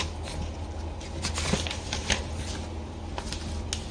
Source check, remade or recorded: recorded